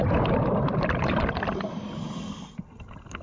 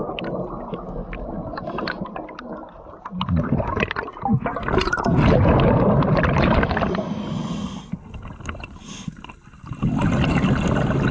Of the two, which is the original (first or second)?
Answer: second